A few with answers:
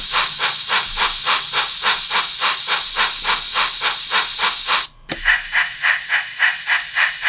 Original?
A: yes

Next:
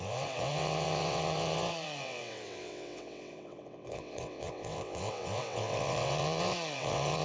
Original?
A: no